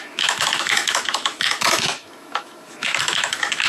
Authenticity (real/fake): fake